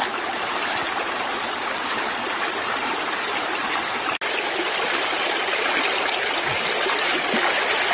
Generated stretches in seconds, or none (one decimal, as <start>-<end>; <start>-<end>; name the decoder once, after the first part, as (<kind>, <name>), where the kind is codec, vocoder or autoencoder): none

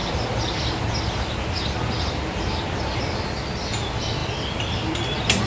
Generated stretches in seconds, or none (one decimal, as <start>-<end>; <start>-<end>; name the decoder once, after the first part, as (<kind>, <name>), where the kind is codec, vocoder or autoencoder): none

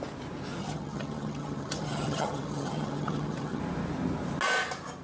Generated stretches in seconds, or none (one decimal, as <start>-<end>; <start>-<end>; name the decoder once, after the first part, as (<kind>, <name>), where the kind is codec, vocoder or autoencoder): 0.6-3.6 (vocoder, HiFi-GAN)

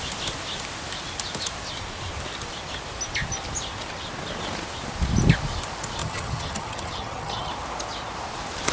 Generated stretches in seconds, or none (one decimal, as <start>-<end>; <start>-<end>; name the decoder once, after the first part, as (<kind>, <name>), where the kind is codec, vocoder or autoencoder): 6.0-7.5 (vocoder, HiFi-GAN)

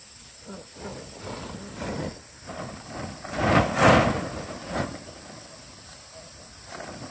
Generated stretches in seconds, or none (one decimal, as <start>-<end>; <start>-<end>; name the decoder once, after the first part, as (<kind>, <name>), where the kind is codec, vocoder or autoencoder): none

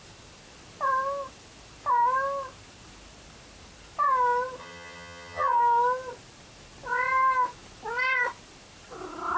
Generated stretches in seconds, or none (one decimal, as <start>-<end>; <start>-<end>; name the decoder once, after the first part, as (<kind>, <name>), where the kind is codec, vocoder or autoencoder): 4.6-5.6 (vocoder, HiFi-GAN)